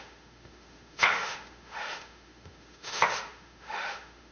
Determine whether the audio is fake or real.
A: fake